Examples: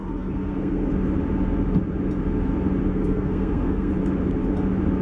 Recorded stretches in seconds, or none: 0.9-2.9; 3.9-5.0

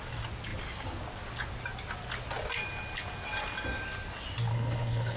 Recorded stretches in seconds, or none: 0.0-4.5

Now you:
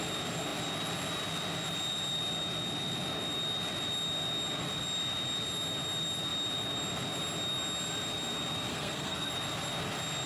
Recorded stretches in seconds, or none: 0.0-8.7; 9.3-10.3

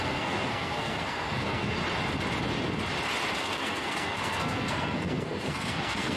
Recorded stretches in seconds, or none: 1.8-3.4